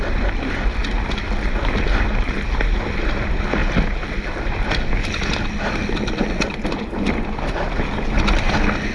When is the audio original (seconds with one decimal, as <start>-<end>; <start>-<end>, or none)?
0.8-2.6; 3.6-4.3